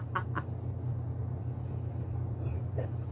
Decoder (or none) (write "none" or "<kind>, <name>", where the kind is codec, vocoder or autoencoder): none